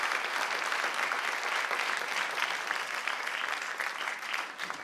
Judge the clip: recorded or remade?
recorded